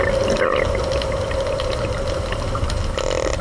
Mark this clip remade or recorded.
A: recorded